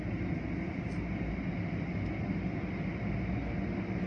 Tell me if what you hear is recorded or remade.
recorded